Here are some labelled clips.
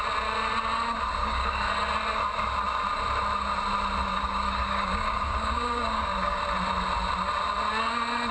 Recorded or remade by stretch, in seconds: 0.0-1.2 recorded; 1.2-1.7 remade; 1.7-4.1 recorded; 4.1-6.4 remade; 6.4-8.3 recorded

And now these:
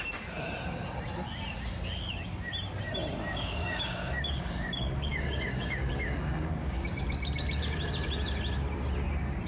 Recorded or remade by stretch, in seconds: 0.0-3.3 recorded; 3.3-7.0 remade; 7.0-9.5 recorded

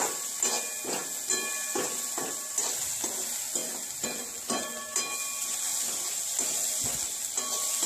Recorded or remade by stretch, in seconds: 0.0-7.9 recorded

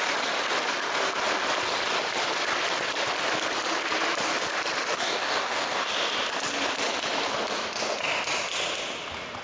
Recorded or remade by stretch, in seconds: 0.0-4.9 recorded; 4.9-5.9 remade; 5.9-9.4 recorded

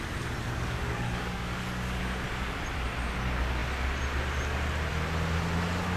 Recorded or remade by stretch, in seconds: 0.0-0.4 recorded; 0.4-2.0 remade; 2.0-6.0 recorded

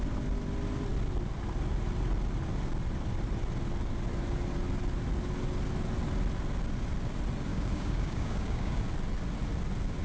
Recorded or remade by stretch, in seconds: 0.0-7.5 recorded; 7.5-8.8 remade; 8.8-10.0 recorded

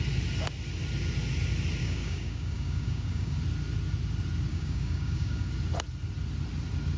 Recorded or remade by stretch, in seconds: 0.0-1.8 recorded; 1.8-3.4 remade; 3.4-4.5 recorded; 4.5-5.5 remade; 5.5-7.0 recorded

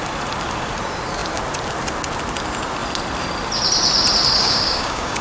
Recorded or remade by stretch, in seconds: 0.0-4.4 recorded; 4.4-5.2 remade